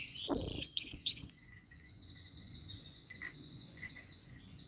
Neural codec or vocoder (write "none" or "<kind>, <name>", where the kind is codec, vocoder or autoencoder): vocoder, Vocos